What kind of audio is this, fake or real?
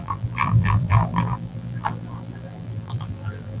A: fake